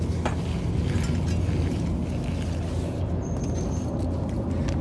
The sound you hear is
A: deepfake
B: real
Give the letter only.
B